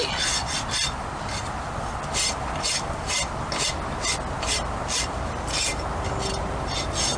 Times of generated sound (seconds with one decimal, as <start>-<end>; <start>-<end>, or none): none